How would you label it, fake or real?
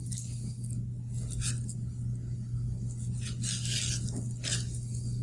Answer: real